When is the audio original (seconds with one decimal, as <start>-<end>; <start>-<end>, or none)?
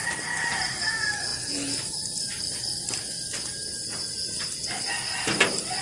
0.9-5.8